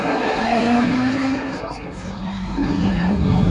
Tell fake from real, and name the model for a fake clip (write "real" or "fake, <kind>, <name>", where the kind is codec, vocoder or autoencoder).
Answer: fake, codec, SNAC